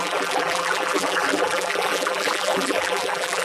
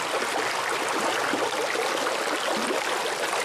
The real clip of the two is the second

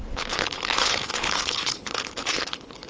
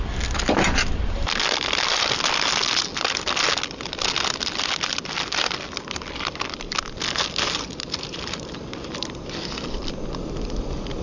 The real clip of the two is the second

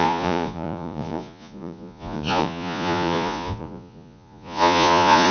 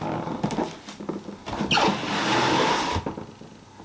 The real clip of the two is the second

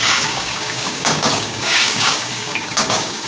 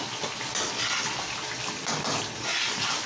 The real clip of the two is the second